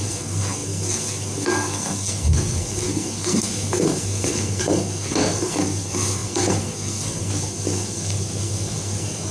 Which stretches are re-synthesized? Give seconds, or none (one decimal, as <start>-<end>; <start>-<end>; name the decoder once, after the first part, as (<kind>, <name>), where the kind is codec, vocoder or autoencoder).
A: 0.0-9.3 (codec, SNAC)